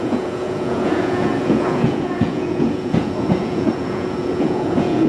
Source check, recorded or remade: remade